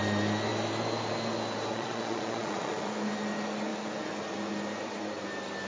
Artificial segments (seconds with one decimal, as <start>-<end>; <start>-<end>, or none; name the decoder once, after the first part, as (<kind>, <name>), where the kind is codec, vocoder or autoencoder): 1.7-2.9 (vocoder, Vocos)